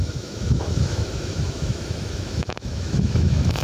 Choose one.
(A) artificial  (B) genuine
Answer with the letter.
A